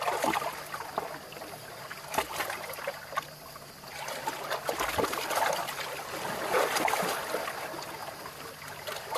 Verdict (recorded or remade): recorded